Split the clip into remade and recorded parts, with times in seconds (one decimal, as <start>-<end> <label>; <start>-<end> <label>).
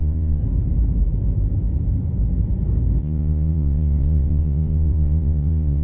0.0-0.4 remade; 0.4-3.0 recorded; 3.0-5.8 remade